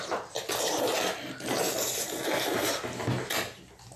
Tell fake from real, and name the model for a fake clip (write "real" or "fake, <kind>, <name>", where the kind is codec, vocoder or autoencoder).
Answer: real